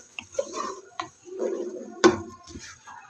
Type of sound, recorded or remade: remade